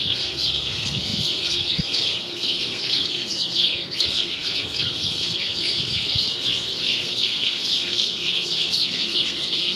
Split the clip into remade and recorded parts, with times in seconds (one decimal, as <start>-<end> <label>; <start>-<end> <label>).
0.0-9.8 remade